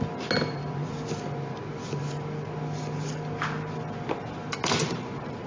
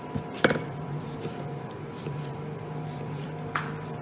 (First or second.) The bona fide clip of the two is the first